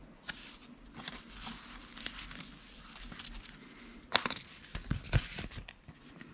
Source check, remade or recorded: recorded